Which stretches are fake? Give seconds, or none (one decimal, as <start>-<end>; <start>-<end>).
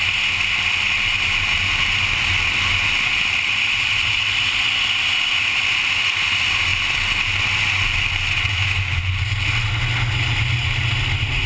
8.5-9.0